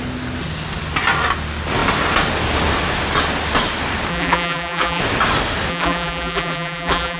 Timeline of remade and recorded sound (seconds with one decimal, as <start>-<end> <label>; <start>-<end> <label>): 0.0-4.1 recorded; 4.1-5.0 remade; 5.0-5.7 recorded; 5.7-7.2 remade